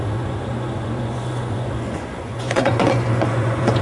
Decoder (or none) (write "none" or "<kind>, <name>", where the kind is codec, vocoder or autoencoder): vocoder, Vocos